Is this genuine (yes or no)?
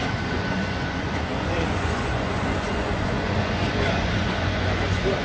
no